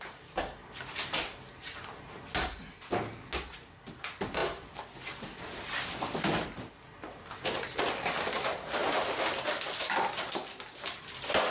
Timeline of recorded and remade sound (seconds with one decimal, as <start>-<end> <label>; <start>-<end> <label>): 0.0-11.5 recorded